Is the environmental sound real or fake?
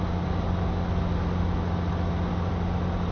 real